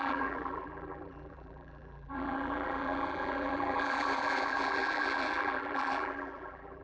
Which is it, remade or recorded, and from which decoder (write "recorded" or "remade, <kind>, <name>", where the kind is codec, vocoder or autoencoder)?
remade, vocoder, BigVGAN v2